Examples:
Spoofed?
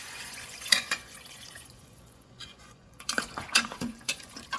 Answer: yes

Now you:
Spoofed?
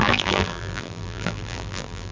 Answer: yes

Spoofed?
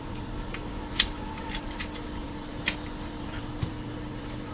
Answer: yes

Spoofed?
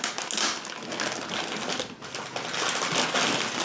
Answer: no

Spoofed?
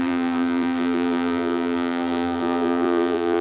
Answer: yes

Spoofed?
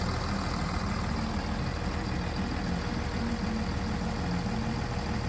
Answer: no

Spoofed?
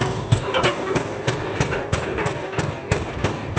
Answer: yes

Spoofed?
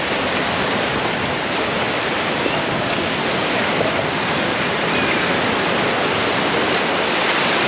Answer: no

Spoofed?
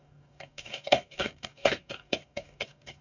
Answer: yes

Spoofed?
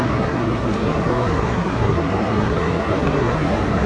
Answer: yes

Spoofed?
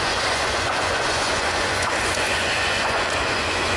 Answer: yes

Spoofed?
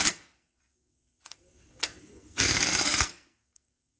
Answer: yes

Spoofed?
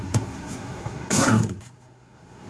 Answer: yes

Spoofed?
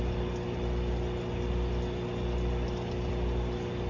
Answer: no